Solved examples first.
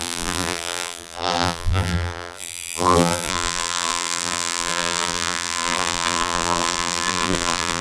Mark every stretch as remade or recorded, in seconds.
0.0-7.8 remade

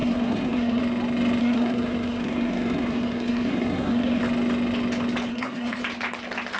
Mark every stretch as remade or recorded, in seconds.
0.0-0.8 remade; 0.8-1.4 recorded; 1.4-4.2 remade; 4.2-5.3 recorded; 5.3-5.8 remade; 5.8-6.6 recorded

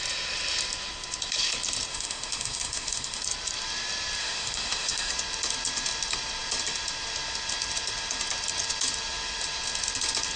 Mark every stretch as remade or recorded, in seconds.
0.0-1.9 recorded; 1.9-3.2 remade; 3.2-4.2 recorded; 4.2-5.1 remade; 5.1-10.4 recorded

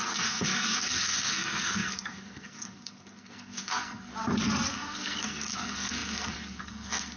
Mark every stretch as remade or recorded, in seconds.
0.0-4.1 remade; 4.1-4.7 recorded; 4.7-7.2 remade

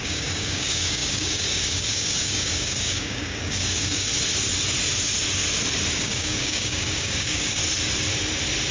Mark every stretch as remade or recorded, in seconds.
0.0-4.1 remade; 4.1-6.0 recorded; 6.0-7.6 remade; 7.6-8.7 recorded

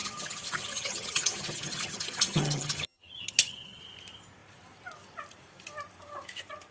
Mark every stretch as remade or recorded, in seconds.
0.0-3.8 remade; 3.8-6.7 recorded